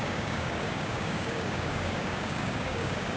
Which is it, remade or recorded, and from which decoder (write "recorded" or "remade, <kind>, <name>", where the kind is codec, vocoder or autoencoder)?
remade, codec, DAC